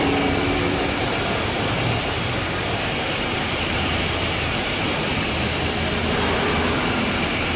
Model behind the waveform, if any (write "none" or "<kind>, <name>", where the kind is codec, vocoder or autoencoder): vocoder, BigVGAN v2